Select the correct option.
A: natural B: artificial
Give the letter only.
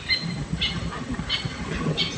A